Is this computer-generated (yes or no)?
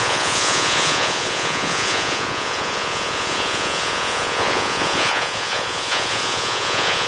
yes